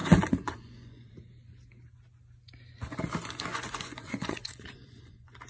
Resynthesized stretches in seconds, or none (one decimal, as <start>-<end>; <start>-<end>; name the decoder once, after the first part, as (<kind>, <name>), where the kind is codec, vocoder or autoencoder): 0.0-1.1 (vocoder, Vocos); 3.5-5.5